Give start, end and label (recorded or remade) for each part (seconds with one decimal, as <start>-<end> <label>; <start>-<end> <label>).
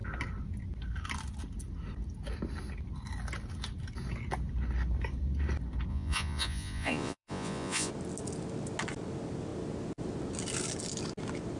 0.0-5.9 recorded; 5.9-7.9 remade; 7.9-11.6 recorded